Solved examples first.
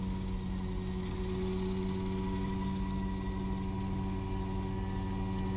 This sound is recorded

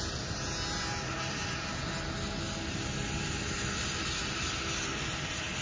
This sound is recorded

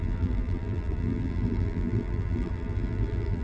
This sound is remade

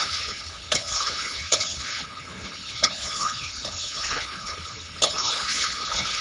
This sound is remade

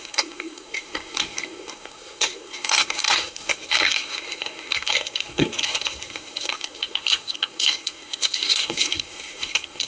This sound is remade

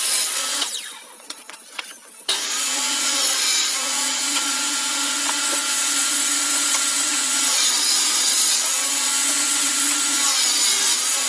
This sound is remade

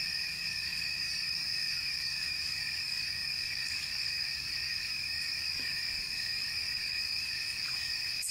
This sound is remade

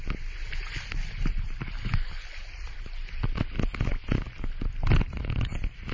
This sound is recorded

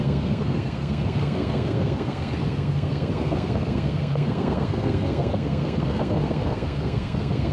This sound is remade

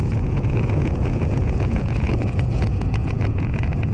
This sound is remade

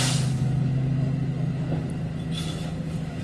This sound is recorded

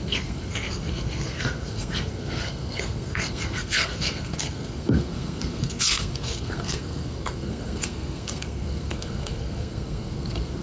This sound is remade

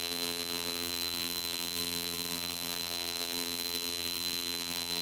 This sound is remade